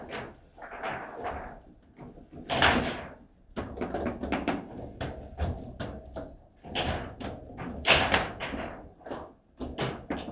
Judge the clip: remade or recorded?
recorded